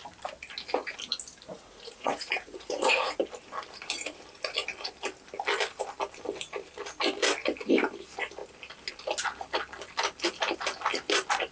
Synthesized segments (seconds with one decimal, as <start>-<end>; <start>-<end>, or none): 1.5-3.2